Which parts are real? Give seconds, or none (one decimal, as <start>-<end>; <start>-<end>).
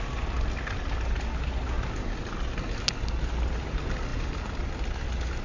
0.0-5.4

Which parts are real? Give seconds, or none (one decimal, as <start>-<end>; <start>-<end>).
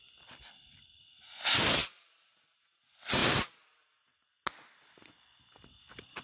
0.0-1.8; 2.5-6.2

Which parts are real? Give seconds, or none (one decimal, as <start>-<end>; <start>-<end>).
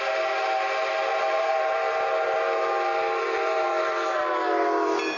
0.0-1.1; 4.2-5.2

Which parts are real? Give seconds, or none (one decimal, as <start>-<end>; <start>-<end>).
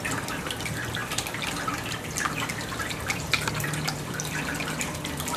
none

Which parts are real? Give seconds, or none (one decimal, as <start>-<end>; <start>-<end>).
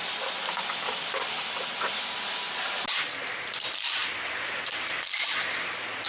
0.0-4.0; 5.2-6.1